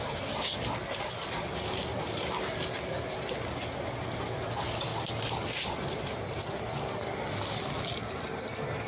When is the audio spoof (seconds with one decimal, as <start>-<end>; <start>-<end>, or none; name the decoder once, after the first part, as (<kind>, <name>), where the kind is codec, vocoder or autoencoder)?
4.9-6.4 (vocoder, BigVGAN v2)

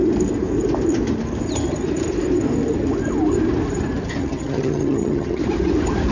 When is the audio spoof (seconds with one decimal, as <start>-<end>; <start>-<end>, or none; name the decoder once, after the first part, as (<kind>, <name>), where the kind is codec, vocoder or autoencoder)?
4.2-5.4 (vocoder, HiFi-GAN)

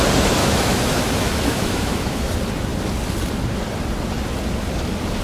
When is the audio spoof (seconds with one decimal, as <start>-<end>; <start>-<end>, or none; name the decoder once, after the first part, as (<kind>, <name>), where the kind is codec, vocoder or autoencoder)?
0.4-2.3 (autoencoder, DAC-VAE)

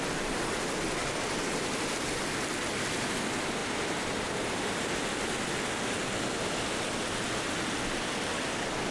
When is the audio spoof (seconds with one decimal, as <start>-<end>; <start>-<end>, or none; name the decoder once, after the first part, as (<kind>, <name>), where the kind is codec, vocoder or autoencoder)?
none

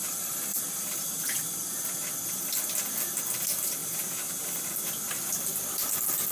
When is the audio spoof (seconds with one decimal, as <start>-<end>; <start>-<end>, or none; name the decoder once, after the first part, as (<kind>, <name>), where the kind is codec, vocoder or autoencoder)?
0.5-1.8 (vocoder, BigVGAN v2); 3.8-4.7

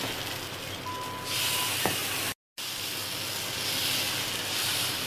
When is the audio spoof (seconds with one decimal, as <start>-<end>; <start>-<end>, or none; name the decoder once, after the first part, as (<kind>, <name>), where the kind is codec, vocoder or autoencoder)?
none